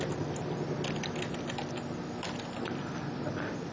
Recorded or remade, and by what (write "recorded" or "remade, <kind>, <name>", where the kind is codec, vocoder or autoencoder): recorded